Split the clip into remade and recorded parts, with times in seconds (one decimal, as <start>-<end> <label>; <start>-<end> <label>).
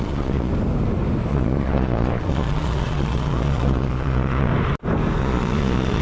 0.0-0.5 remade; 0.5-1.3 recorded; 1.3-4.5 remade; 4.5-5.2 recorded; 5.2-6.0 remade